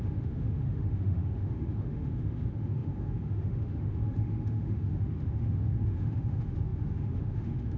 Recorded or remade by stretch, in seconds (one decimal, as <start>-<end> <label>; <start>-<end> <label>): 0.0-7.8 remade

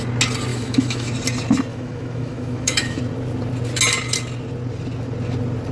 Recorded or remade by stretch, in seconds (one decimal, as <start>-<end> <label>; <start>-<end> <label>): 0.0-0.5 recorded; 0.5-1.1 remade; 1.1-1.7 recorded; 1.7-3.0 remade; 3.0-5.7 recorded